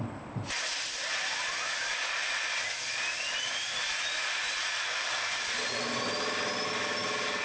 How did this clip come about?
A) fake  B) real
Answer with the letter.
A